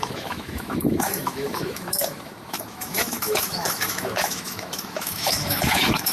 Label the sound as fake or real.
fake